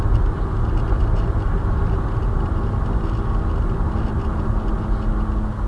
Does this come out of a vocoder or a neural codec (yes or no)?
no